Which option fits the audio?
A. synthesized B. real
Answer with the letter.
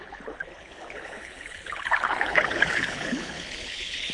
A